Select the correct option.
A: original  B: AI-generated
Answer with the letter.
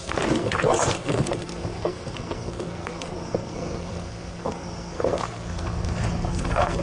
B